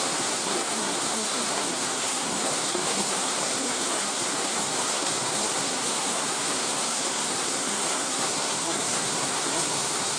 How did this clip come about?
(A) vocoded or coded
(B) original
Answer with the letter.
A